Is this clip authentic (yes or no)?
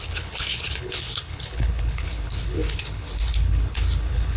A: no